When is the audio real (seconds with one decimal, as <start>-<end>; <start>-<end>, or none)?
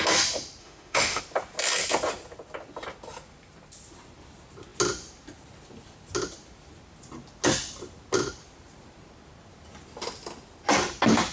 0.0-0.6; 1.2-11.3